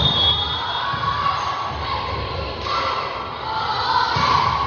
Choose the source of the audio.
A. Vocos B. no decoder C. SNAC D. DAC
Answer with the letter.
B